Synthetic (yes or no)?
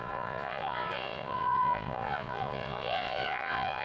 yes